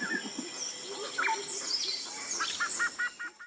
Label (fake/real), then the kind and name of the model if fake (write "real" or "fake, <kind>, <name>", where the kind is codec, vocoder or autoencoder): real